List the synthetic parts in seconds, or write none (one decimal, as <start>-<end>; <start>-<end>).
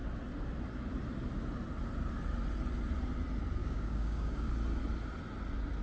3.6-4.5